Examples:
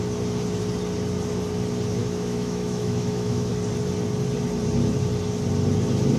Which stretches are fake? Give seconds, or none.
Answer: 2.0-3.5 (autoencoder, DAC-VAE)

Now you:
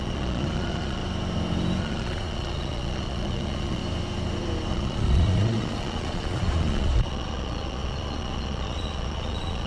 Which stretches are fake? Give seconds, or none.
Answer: 0.0-1.0 (vocoder, Vocos); 1.8-3.8; 4.7-9.7

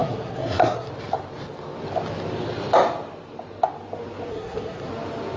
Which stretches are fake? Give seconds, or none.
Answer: 0.0-0.9 (codec, SNAC); 4.3-4.9

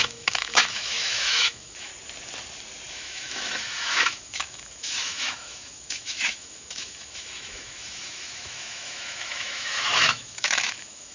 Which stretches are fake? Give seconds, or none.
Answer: 0.0-1.9 (autoencoder, DAC-VAE); 2.9-11.1

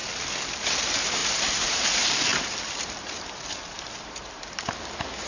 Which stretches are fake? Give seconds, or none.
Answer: 0.6-5.3 (vocoder, BigVGAN v2)

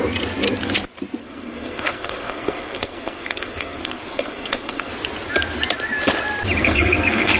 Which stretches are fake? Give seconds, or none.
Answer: 1.2-4.9 (codec, SNAC); 6.6-7.4

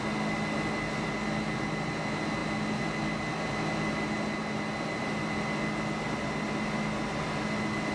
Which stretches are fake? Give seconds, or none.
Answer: none

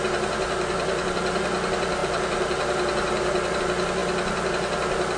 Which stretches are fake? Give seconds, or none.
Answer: none